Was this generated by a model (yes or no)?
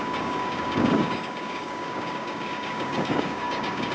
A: yes